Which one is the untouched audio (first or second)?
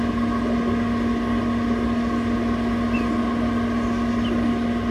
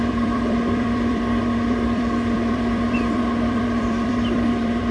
first